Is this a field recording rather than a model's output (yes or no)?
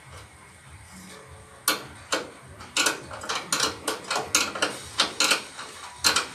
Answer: yes